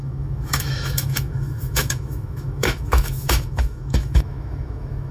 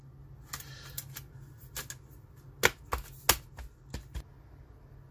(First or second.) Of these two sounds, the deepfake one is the first